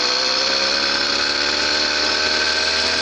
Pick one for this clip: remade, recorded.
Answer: recorded